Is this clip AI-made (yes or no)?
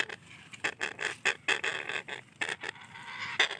no